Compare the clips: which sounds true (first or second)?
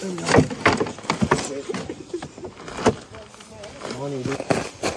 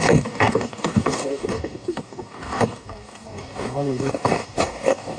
first